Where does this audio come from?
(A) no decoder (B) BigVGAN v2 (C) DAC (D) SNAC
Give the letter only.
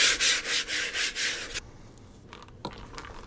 A